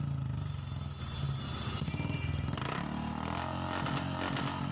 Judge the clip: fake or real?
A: real